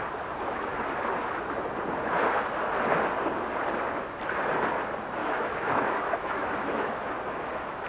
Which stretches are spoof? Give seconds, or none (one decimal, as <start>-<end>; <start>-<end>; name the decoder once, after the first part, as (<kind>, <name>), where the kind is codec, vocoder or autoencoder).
5.2-7.1 (autoencoder, DAC-VAE)